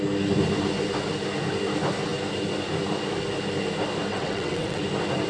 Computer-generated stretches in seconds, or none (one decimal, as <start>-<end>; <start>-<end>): 4.1-4.8